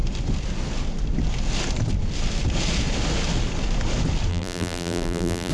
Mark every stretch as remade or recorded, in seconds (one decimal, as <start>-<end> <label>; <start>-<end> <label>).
0.0-4.3 recorded; 4.3-5.5 remade